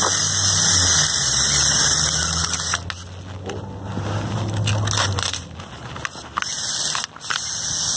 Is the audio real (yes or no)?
yes